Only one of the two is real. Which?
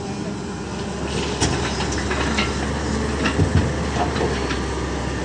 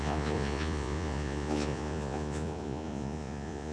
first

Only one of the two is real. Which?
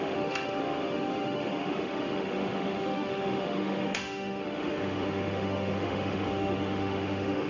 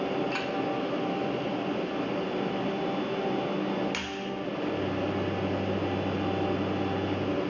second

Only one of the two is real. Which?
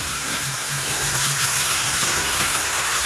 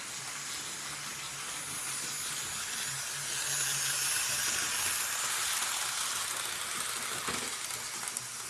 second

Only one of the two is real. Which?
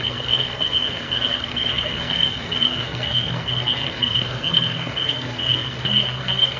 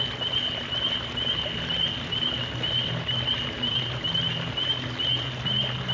second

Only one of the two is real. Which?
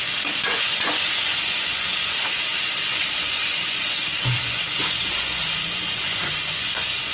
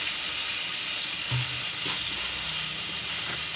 second